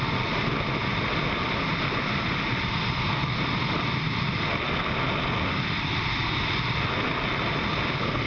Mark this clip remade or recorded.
recorded